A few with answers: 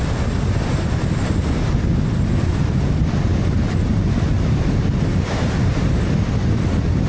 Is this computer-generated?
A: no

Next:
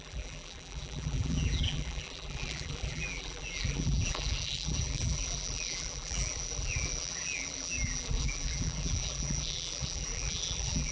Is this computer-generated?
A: yes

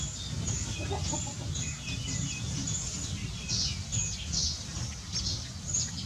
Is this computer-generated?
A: no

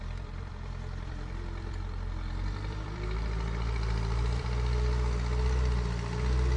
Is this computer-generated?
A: yes